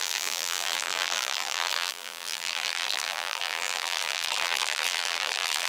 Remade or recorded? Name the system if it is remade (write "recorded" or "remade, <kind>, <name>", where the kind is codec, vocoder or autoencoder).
remade, vocoder, BigVGAN v2